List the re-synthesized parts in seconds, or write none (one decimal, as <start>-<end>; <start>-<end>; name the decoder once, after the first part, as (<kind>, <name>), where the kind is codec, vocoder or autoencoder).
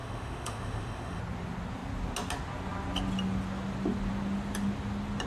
0.0-1.2 (autoencoder, DAC-VAE)